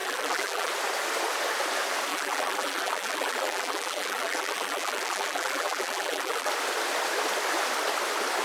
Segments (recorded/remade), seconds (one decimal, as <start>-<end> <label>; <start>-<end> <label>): 0.0-0.7 remade; 0.7-2.1 recorded; 2.1-6.5 remade; 6.5-8.4 recorded